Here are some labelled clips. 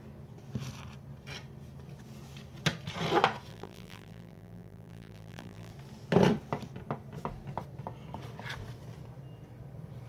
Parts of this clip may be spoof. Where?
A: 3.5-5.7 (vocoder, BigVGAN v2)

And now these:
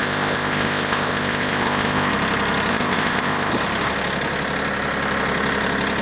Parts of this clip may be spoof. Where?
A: 0.0-2.1 (codec, ZipCodec); 2.7-3.5

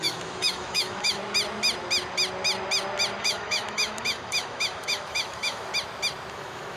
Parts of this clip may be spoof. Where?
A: 0.0-1.2 (autoencoder, DAC-VAE); 3.2-5.7; 6.3-6.8

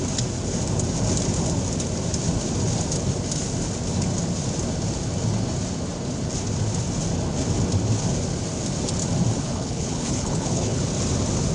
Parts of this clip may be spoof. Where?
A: 9.5-10.8 (codec, HILCodec)